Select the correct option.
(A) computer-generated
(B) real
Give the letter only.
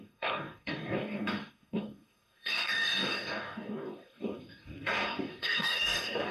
A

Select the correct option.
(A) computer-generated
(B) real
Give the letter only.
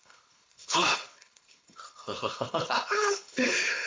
A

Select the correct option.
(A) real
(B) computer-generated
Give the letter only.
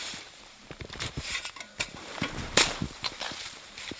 B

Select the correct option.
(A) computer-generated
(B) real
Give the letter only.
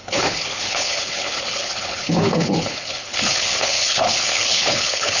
A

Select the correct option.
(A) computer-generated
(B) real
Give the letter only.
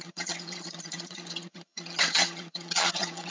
A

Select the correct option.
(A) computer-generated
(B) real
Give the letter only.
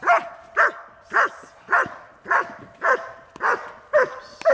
B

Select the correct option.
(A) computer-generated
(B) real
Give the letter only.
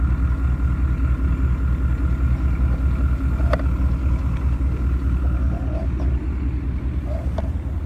B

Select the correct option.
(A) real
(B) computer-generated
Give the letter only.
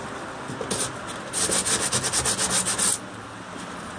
A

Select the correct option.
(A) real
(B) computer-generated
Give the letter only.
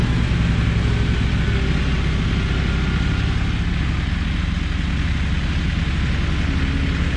A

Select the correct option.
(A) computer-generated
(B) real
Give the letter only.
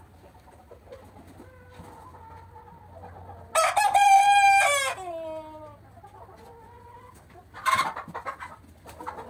B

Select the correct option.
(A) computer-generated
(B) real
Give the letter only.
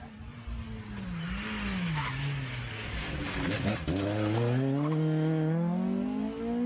B